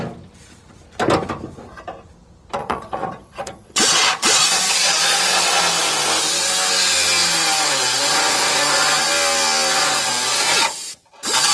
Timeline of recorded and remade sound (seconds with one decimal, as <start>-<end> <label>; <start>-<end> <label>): 0.0-2.6 recorded; 2.6-5.5 remade; 5.5-11.5 recorded